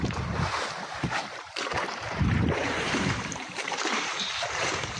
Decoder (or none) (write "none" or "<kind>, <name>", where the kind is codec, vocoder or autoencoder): vocoder, BigVGAN v2